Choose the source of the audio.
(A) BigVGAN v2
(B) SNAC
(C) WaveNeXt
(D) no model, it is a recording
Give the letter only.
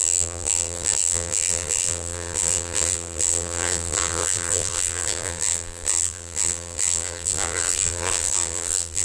A